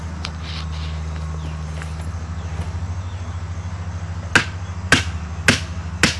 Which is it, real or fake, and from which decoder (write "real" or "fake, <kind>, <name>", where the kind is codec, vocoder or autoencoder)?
real